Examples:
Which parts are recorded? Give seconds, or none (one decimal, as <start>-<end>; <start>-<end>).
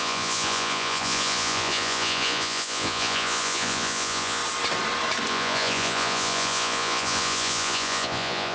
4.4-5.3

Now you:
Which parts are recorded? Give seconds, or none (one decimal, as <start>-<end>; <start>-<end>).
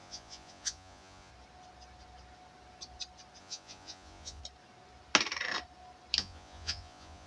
1.3-3.4; 4.4-6.2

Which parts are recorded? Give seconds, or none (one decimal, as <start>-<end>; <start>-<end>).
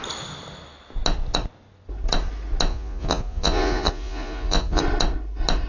0.0-2.7; 4.8-5.7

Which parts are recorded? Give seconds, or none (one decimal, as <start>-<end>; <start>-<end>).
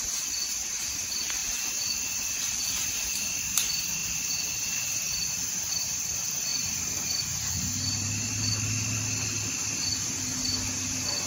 0.0-11.3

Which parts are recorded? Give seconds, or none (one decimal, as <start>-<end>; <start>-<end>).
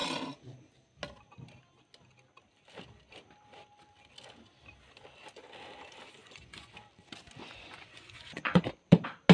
0.0-6.2; 6.7-7.4; 8.6-9.3